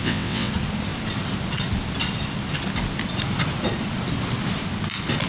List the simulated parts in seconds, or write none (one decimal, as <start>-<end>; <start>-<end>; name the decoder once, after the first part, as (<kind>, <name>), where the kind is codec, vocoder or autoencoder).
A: 0.0-0.5 (vocoder, WaveNeXt)